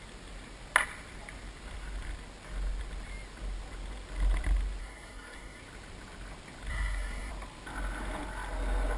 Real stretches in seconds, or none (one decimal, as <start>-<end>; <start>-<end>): 0.0-4.8; 5.6-6.7; 7.3-9.0